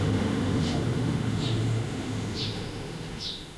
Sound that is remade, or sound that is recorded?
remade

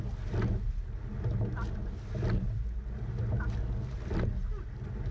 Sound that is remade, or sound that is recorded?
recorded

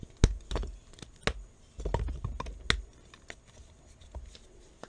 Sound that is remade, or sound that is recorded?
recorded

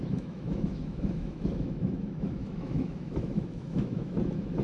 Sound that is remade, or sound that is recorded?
remade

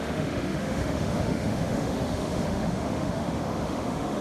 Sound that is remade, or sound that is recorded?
remade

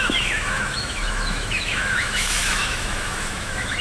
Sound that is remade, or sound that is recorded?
remade